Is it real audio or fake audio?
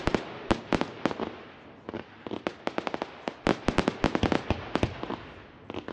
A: real